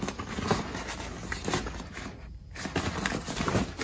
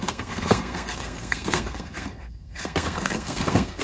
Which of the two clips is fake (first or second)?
second